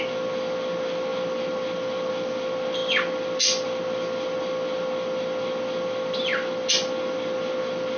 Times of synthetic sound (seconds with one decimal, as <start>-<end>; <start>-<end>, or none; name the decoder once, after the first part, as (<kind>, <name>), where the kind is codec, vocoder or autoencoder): none